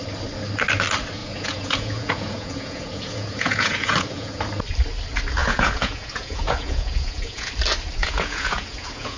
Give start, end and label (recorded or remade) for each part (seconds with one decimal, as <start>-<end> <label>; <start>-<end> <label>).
0.0-1.2 recorded; 1.2-4.4 remade; 4.4-5.4 recorded; 5.4-7.5 remade; 7.5-8.0 recorded; 8.0-9.2 remade